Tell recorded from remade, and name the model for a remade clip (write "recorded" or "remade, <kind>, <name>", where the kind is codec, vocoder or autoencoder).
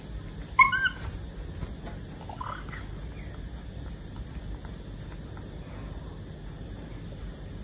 recorded